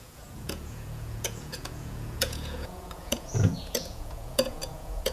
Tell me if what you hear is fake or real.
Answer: fake